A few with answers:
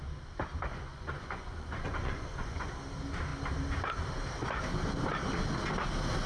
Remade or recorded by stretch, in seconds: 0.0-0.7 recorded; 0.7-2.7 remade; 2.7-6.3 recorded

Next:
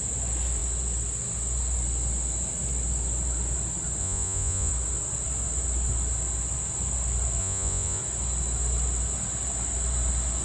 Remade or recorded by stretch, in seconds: 0.0-4.0 recorded; 4.0-4.7 remade; 4.7-7.4 recorded; 7.4-8.0 remade; 8.0-10.4 recorded

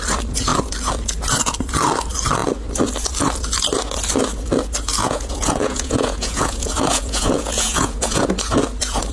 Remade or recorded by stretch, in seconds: 0.0-5.0 recorded; 5.0-8.3 remade; 8.3-9.1 recorded

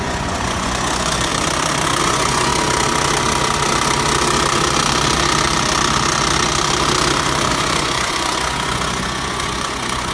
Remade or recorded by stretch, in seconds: 0.0-1.3 remade; 1.3-2.0 recorded; 2.0-2.5 remade; 2.5-7.5 recorded; 7.5-10.1 remade

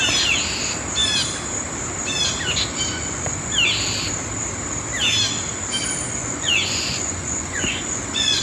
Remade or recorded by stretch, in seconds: 0.0-2.9 recorded; 2.9-3.5 remade; 3.5-6.2 recorded; 6.2-8.4 remade

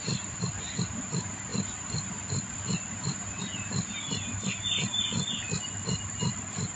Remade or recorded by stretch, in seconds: 0.0-6.8 recorded